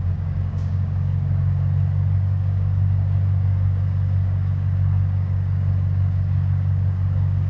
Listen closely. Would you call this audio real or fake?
fake